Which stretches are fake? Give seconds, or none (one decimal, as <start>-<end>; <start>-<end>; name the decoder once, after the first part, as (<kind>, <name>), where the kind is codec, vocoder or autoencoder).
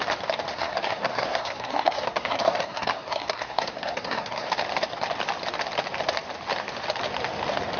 0.5-4.5 (codec, SNAC)